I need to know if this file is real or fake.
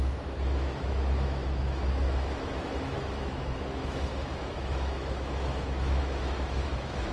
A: fake